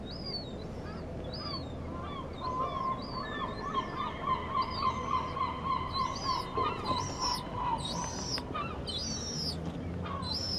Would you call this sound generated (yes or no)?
no